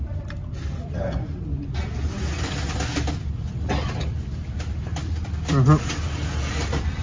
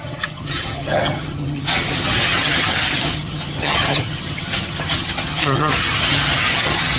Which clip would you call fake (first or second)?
second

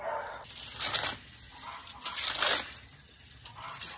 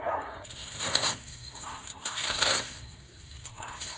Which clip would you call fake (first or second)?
second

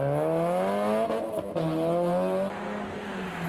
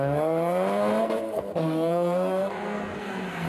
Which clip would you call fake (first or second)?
second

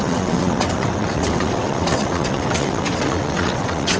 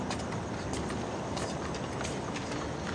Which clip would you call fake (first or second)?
first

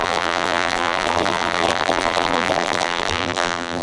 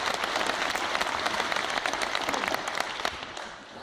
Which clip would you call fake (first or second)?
first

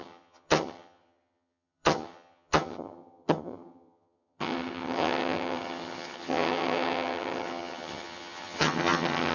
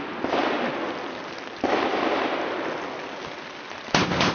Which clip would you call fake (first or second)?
first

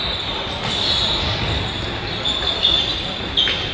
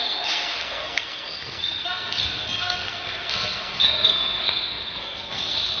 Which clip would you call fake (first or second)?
second